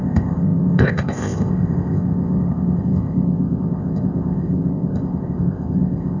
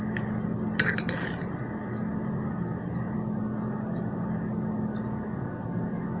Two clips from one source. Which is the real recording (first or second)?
second